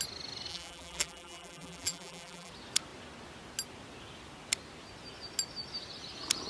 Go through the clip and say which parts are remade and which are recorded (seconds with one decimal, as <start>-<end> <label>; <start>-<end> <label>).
0.0-0.5 recorded; 0.5-2.5 remade; 2.5-6.5 recorded